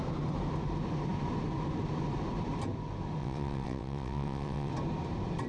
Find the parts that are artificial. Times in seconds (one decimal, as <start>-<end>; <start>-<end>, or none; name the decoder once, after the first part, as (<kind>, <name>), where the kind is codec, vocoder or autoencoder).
3.2-4.7 (vocoder, WaveNeXt)